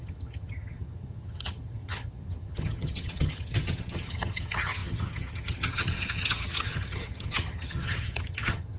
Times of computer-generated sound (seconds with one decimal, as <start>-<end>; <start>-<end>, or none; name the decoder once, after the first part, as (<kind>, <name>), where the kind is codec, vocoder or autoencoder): 0.0-8.8 (vocoder, HiFi-GAN)